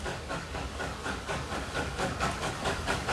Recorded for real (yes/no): no